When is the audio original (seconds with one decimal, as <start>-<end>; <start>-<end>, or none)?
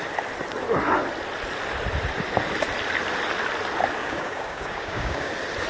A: 0.0-4.0; 5.3-5.7